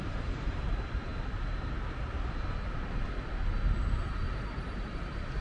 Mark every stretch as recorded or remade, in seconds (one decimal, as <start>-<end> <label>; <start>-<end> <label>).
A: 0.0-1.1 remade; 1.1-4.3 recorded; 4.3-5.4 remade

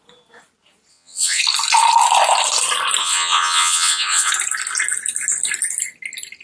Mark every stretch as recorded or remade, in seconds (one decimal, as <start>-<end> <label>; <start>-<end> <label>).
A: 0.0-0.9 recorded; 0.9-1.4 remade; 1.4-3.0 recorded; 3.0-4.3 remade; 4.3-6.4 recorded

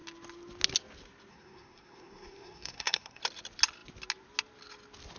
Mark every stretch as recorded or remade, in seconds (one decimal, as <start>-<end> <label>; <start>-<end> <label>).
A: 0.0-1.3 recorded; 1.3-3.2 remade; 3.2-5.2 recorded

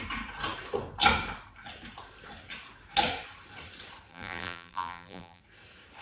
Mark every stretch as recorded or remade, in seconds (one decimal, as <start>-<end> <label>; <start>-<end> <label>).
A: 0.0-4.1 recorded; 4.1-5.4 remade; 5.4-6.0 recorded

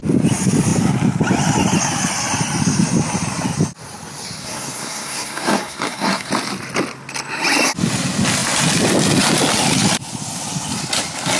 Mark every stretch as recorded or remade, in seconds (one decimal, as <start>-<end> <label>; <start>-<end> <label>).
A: 0.0-4.4 recorded; 4.4-6.3 remade; 6.3-11.4 recorded

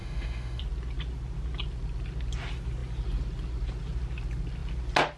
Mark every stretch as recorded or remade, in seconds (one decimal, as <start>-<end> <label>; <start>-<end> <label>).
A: 0.0-0.6 remade; 0.6-5.2 recorded